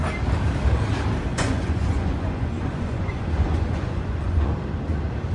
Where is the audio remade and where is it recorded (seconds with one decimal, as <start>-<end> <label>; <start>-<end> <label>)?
0.0-1.3 recorded; 1.3-4.5 remade; 4.5-5.3 recorded